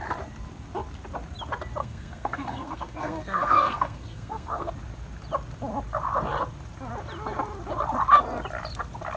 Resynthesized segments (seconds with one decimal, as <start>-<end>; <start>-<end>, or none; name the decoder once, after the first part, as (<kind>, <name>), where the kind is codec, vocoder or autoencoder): 1.8-4.7 (codec, SNAC)